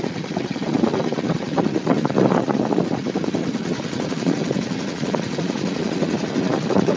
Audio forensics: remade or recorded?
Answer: remade